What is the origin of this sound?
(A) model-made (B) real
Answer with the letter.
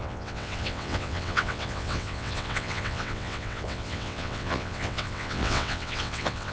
A